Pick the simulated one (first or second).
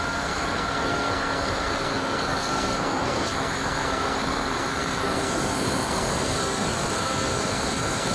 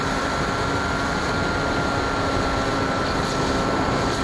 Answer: first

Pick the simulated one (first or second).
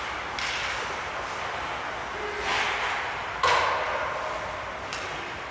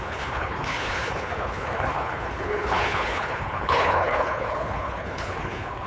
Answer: second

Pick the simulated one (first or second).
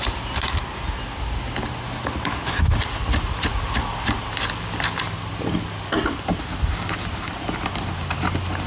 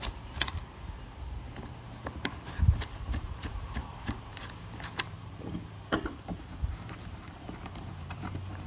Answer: second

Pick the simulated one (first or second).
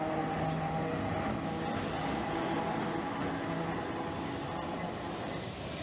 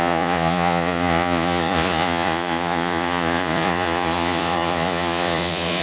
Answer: second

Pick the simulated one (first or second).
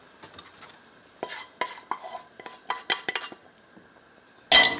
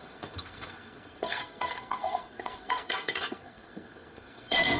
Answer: second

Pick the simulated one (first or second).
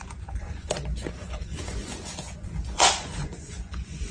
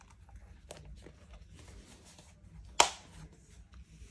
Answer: first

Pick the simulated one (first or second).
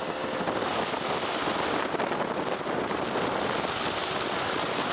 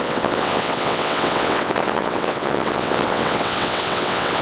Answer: second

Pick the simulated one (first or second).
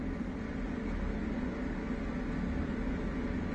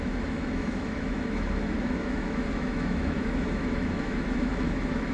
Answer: second